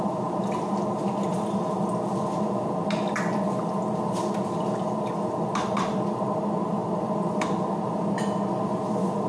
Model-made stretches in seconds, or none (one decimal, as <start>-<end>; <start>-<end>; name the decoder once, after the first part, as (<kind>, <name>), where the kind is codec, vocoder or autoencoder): none

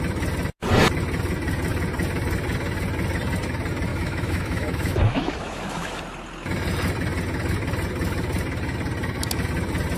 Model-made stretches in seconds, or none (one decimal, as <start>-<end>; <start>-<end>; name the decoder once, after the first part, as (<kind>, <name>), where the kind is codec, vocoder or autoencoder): 3.9-6.0 (autoencoder, DAC-VAE)